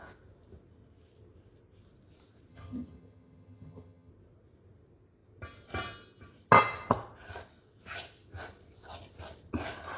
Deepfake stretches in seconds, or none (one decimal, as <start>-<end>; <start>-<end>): 2.5-4.1